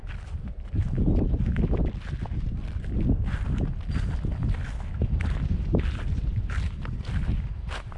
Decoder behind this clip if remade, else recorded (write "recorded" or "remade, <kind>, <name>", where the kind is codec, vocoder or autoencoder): recorded